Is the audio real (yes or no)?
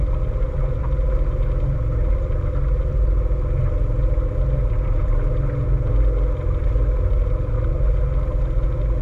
yes